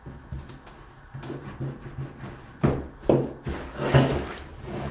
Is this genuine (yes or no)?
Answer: yes